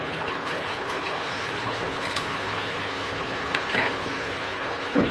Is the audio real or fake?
fake